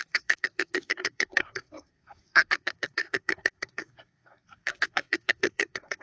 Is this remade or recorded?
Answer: remade